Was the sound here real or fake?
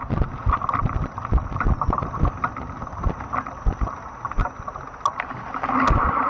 real